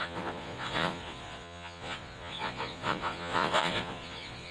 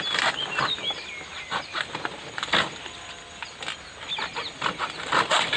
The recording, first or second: second